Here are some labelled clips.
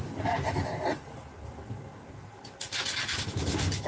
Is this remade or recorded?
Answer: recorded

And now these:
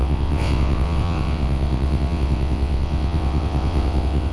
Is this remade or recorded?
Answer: remade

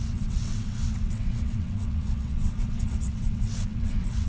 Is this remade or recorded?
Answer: remade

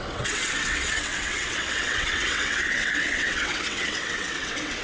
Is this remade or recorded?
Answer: remade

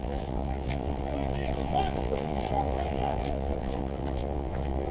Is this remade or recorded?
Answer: remade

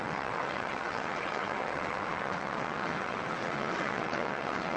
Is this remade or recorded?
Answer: remade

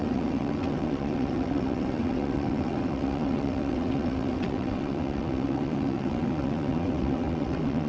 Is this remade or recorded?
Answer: remade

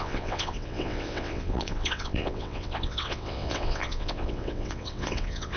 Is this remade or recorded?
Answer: remade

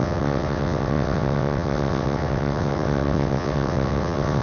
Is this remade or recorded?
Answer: remade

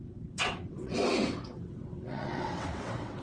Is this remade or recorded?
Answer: remade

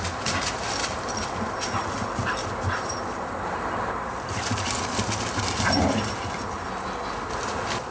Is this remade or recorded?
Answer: recorded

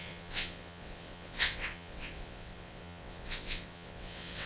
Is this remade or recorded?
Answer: remade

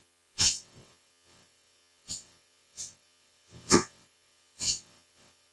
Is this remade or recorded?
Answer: remade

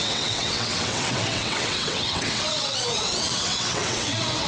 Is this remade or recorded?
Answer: remade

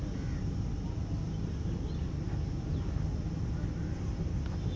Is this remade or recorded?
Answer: recorded